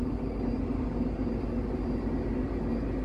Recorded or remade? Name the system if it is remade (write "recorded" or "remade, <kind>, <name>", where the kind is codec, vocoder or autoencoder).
recorded